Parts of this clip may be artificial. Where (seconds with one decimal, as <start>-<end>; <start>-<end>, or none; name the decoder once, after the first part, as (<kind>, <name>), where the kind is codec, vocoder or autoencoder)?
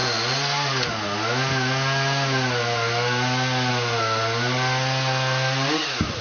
none